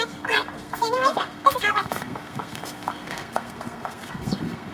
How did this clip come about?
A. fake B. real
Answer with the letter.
A